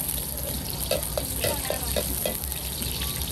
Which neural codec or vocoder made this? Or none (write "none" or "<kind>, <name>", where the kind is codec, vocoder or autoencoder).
none